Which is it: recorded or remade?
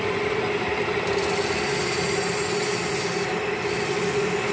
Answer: recorded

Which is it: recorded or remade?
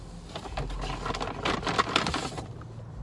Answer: recorded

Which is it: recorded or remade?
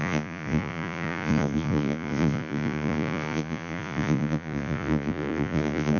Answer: remade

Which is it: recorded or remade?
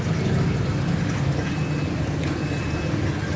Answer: recorded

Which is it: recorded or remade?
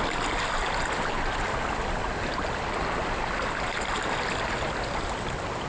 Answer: recorded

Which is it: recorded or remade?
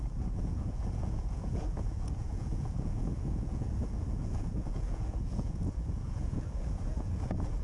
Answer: remade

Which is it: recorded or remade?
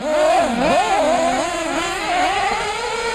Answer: recorded